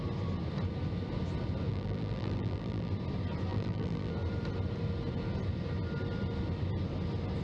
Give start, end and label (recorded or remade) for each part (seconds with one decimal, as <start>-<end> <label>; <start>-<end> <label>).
0.0-1.7 recorded; 1.7-2.9 remade; 2.9-3.5 recorded; 3.5-4.1 remade; 4.1-7.4 recorded